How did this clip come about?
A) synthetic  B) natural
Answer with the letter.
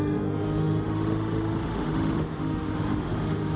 A